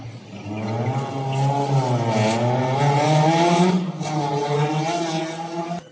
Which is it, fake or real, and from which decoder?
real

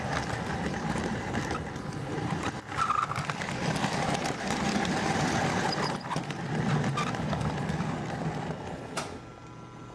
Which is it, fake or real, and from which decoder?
real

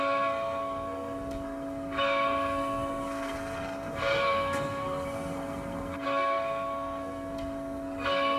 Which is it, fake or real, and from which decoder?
fake, codec, SNAC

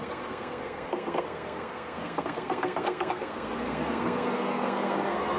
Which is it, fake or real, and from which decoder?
fake, codec, SNAC